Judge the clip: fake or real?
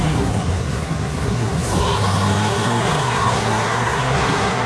fake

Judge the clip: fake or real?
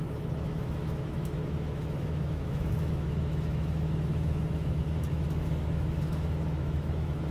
fake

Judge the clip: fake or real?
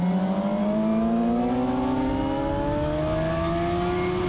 real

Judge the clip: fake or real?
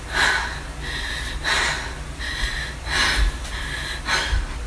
real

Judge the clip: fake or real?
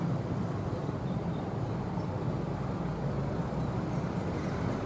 real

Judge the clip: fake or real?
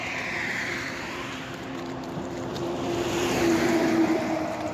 fake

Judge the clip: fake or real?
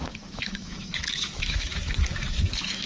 fake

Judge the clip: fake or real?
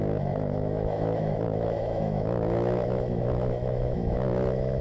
fake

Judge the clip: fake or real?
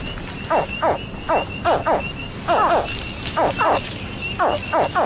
real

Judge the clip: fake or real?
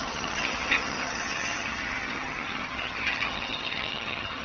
fake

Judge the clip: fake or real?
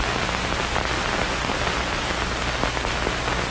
real